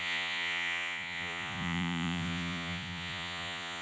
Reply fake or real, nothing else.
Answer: fake